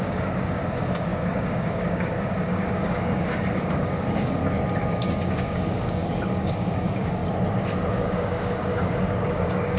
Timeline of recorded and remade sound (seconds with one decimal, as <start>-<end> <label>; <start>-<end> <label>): 0.0-4.4 remade; 4.4-4.9 recorded; 4.9-7.2 remade; 7.2-7.9 recorded; 7.9-9.8 remade